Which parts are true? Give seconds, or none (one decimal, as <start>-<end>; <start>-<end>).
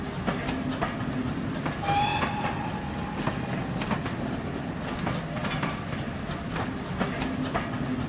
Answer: 0.0-8.1